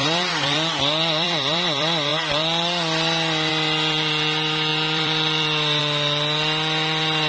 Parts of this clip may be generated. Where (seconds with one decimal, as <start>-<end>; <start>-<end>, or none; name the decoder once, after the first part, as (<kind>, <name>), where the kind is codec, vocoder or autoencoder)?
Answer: 0.0-7.3 (vocoder, BigVGAN v2)